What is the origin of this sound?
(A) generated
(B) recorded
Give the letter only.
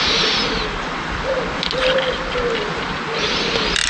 B